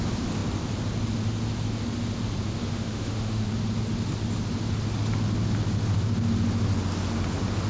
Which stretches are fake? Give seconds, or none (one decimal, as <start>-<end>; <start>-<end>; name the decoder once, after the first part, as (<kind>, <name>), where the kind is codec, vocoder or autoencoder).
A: 2.6-3.5 (autoencoder, DAC-VAE)